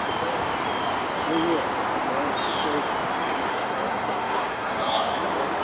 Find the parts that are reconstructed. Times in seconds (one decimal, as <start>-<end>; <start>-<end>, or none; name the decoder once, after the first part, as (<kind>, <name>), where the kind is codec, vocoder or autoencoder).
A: 3.5-5.1 (codec, SNAC)